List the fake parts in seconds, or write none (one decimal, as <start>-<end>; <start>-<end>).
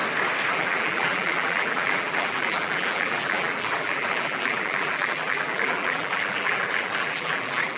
0.5-7.8